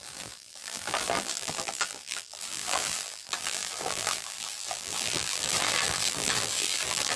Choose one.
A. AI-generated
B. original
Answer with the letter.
A